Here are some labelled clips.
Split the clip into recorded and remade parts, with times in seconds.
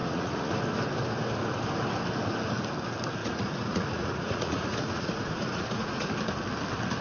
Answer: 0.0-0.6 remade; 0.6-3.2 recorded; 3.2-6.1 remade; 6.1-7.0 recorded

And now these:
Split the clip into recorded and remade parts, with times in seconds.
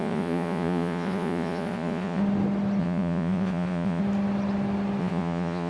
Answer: 0.0-2.2 remade; 2.2-2.8 recorded; 2.8-4.0 remade; 4.0-5.0 recorded; 5.0-5.7 remade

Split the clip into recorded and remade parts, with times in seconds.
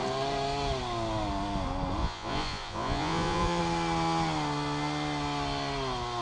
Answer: 0.0-2.0 recorded; 2.0-3.6 remade; 3.6-6.2 recorded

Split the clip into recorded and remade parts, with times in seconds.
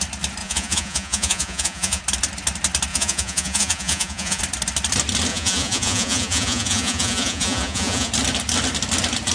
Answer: 0.0-0.4 recorded; 0.4-2.0 remade; 2.0-2.9 recorded; 2.9-4.4 remade; 4.4-5.3 recorded; 5.3-8.1 remade; 8.1-9.3 recorded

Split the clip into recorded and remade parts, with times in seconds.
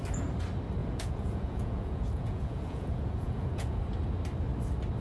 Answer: 0.0-0.8 recorded; 0.8-3.8 remade; 3.8-5.0 recorded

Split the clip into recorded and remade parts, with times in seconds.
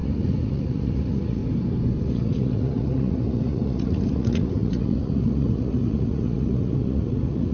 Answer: 0.0-1.4 remade; 1.4-2.0 recorded; 2.0-7.5 remade